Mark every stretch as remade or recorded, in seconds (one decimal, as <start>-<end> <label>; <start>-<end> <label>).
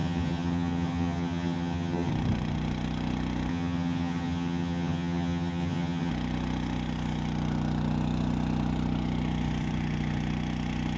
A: 0.0-2.1 remade; 2.1-3.5 recorded; 3.5-6.1 remade; 6.1-11.0 recorded